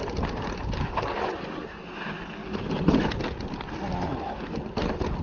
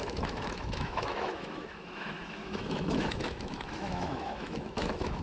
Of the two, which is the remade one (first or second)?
second